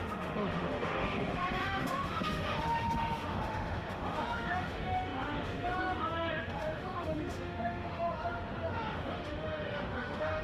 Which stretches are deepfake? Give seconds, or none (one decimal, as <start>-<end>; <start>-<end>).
0.0-10.4